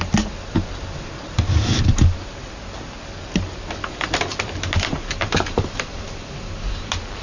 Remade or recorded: recorded